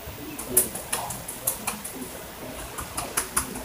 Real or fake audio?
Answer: real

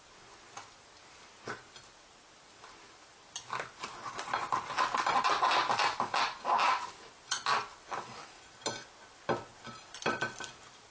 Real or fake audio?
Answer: real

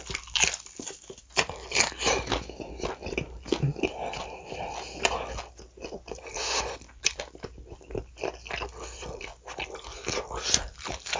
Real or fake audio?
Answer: real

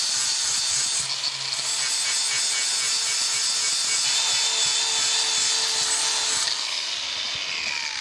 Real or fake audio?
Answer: real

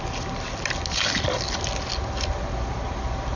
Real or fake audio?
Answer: real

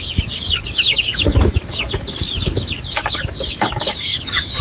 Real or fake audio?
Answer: fake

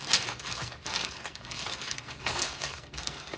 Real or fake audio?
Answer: fake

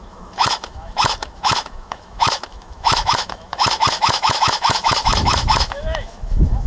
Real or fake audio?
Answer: fake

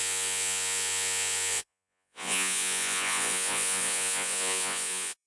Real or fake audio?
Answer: fake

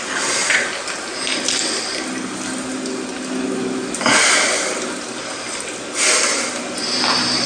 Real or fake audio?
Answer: real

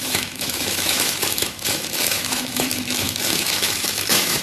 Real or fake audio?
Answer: fake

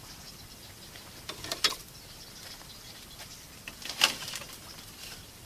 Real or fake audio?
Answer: fake